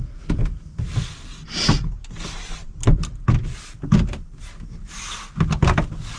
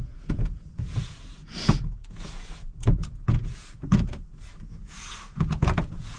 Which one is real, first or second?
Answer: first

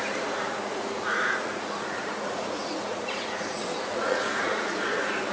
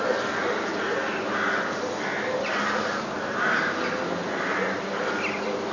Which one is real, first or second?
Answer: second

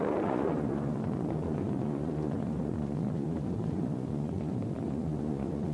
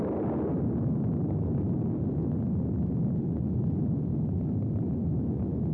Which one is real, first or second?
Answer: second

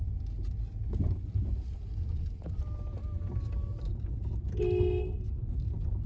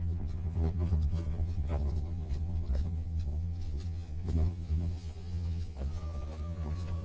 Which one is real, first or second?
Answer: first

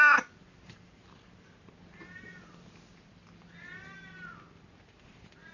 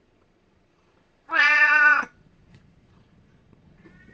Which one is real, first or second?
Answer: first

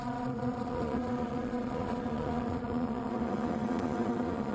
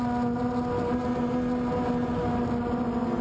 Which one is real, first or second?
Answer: second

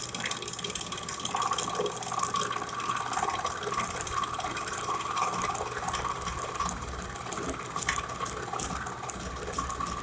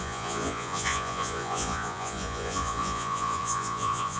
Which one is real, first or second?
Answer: first